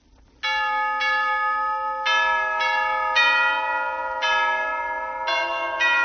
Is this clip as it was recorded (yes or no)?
yes